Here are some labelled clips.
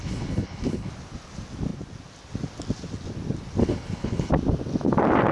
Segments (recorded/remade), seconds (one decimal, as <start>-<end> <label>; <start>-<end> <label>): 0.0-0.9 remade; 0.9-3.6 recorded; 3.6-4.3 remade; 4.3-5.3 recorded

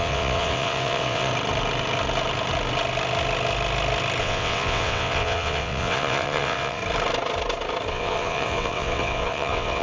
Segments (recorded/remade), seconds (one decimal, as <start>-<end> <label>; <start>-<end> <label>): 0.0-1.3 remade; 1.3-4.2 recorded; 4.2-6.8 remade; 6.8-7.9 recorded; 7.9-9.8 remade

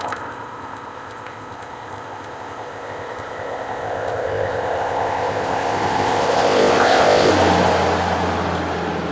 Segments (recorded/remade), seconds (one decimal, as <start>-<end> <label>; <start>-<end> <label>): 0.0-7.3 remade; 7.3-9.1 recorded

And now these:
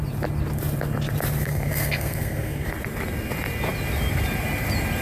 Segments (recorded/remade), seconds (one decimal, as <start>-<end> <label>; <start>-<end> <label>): 0.0-1.4 recorded; 1.4-2.7 remade; 2.7-5.0 recorded

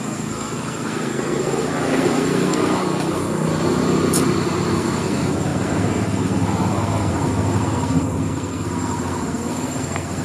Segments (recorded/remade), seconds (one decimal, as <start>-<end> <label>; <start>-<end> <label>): 0.0-3.5 remade; 3.5-4.7 recorded; 4.7-10.2 remade

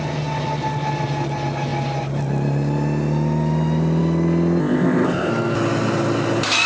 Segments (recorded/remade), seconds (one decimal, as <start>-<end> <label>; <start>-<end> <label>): 0.0-4.6 recorded; 4.6-5.3 remade; 5.3-6.7 recorded